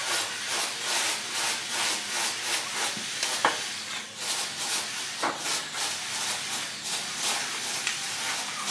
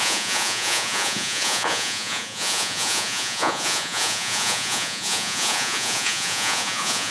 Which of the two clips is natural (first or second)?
first